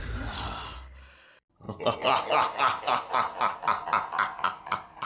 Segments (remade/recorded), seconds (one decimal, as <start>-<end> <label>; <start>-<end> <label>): 0.0-5.1 recorded